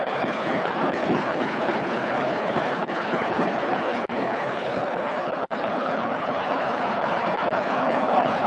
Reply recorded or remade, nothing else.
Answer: remade